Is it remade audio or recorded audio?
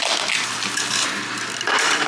recorded